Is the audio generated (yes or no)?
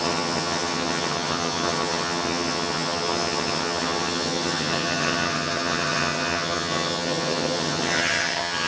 yes